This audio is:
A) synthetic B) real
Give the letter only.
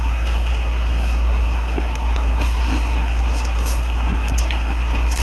A